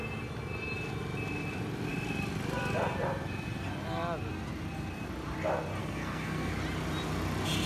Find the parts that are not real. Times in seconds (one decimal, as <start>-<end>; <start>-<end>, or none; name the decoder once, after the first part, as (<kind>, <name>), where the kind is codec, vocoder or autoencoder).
5.8-6.5 (codec, SNAC)